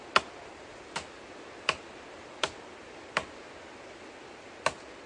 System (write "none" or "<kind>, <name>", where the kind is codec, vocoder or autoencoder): none